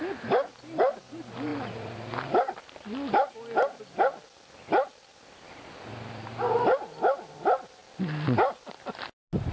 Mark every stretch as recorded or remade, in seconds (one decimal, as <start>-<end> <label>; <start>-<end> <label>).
0.0-9.5 recorded